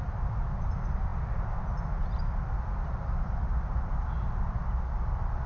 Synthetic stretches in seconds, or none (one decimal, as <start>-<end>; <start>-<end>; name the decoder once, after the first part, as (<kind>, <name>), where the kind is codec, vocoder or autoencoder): none